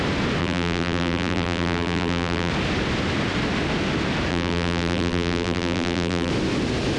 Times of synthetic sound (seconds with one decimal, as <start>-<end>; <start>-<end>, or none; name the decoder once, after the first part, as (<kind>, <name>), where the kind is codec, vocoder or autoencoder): 0.4-2.5 (vocoder, BigVGAN v2); 4.3-6.3